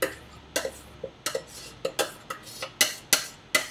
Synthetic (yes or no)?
no